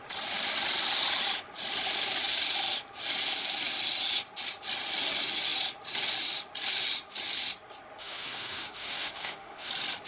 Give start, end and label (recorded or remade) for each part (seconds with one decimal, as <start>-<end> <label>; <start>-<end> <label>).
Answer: 0.0-8.0 recorded; 8.0-9.7 remade; 9.7-10.1 recorded